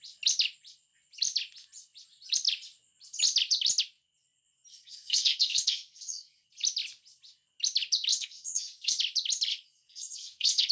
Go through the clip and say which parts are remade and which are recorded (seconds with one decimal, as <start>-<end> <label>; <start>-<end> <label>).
0.0-4.7 recorded; 4.7-6.5 remade; 6.5-8.1 recorded; 8.1-9.0 remade; 9.0-9.5 recorded; 9.5-10.7 remade